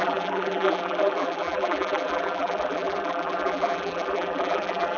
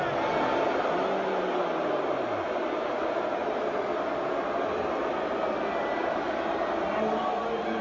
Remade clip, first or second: first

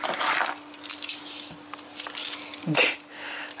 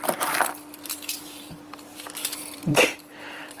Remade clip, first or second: second